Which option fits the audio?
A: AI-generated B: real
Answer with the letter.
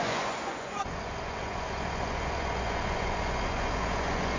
A